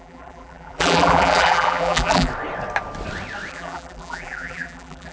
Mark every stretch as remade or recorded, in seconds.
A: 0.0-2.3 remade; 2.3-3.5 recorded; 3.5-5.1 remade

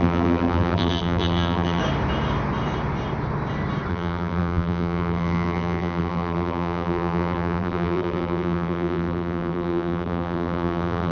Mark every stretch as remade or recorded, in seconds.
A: 0.0-1.8 remade; 1.8-3.9 recorded; 3.9-11.1 remade

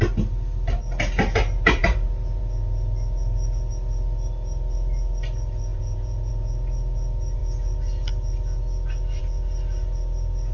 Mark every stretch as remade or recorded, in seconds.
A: 0.0-5.7 recorded; 5.7-6.3 remade; 6.3-10.5 recorded

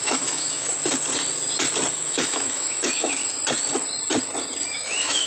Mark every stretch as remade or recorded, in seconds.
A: 0.0-0.7 remade; 0.7-1.9 recorded; 1.9-3.2 remade; 3.2-4.7 recorded; 4.7-5.3 remade

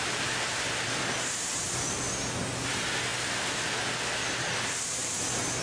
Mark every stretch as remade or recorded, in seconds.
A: 0.0-5.6 recorded